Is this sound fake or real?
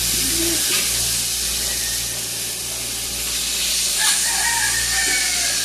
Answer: real